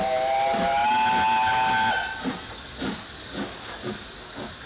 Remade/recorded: recorded